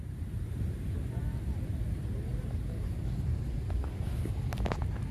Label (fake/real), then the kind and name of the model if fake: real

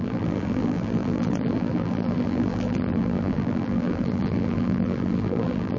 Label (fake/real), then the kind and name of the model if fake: fake, vocoder, BigVGAN v2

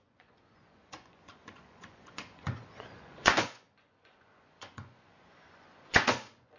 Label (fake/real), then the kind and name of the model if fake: fake, vocoder, Vocos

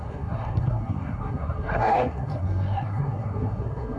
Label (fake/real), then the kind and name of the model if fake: fake, codec, SNAC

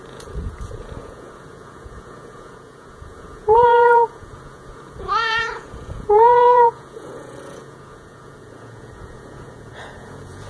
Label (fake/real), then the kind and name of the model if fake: fake, vocoder, Vocos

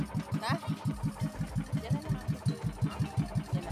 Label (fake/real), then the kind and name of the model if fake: real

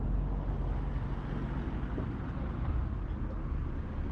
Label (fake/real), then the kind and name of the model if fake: real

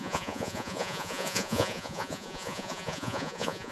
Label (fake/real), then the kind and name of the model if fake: fake, vocoder, Vocos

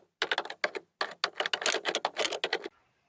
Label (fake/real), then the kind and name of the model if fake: real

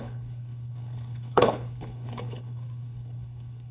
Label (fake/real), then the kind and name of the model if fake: fake, codec, HILCodec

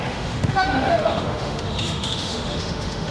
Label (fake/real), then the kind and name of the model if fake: fake, autoencoder, DAC-VAE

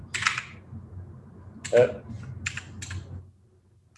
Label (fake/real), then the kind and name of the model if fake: real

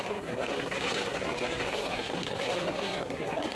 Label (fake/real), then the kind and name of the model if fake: fake, codec, SNAC